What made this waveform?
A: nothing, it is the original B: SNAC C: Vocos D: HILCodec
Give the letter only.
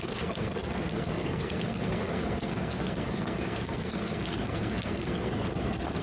B